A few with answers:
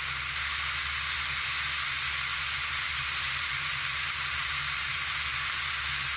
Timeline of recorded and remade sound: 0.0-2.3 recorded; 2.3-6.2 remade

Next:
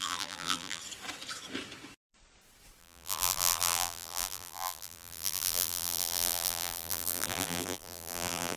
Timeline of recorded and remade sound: 0.0-0.8 remade; 0.8-2.8 recorded; 2.8-8.6 remade

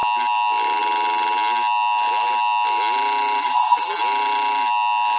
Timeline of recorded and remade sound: 0.0-3.4 recorded; 3.4-4.0 remade; 4.0-5.2 recorded

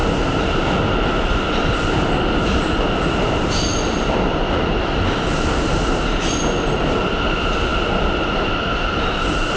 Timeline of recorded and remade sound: 0.0-7.7 recorded; 7.7-9.2 remade; 9.2-9.6 recorded